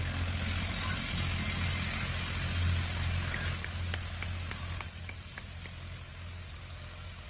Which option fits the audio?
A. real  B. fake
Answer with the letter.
A